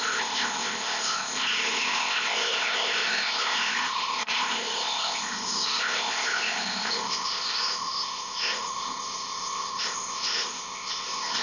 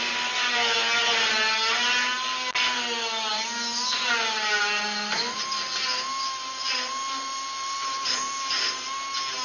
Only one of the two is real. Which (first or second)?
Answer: second